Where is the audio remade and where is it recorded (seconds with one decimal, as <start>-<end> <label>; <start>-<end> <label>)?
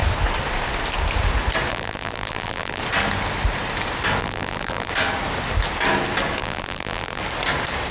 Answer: 0.0-1.7 recorded; 1.7-2.8 remade; 2.8-4.2 recorded; 4.2-4.9 remade; 4.9-6.4 recorded; 6.4-7.2 remade; 7.2-7.9 recorded